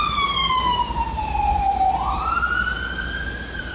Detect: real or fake real